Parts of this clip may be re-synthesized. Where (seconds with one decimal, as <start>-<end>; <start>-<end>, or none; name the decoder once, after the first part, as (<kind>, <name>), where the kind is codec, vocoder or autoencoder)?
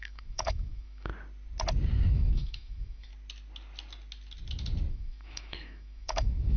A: 0.0-1.1 (autoencoder, DAC-VAE); 2.1-3.1; 4.9-6.6